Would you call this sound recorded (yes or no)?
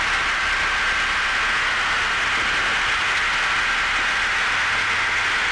yes